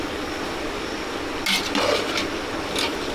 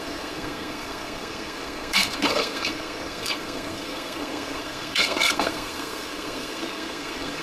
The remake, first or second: second